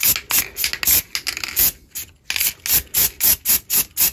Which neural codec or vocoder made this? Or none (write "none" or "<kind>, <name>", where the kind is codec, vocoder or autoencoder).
none